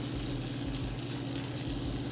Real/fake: real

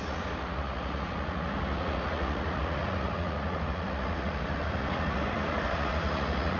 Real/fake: fake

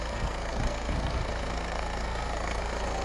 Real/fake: fake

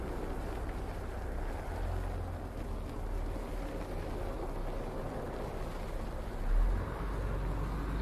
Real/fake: real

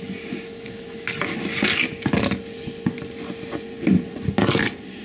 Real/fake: real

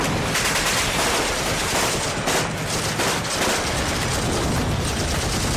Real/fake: real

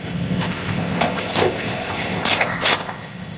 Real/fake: fake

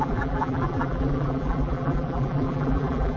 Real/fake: fake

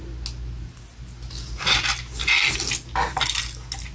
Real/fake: real